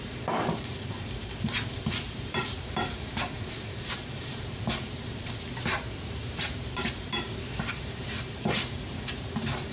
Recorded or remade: remade